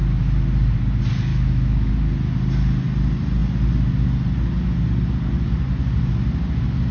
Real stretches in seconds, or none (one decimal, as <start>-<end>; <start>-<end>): 0.0-1.3; 1.9-6.9